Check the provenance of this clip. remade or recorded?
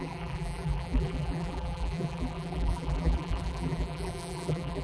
remade